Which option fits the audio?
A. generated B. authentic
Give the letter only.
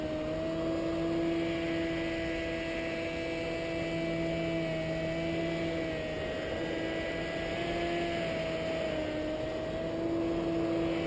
B